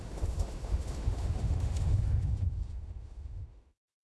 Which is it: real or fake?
fake